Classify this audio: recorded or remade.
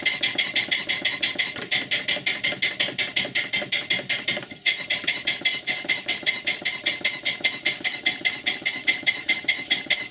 recorded